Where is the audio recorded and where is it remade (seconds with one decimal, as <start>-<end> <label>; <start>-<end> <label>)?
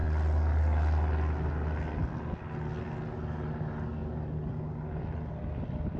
0.0-6.0 recorded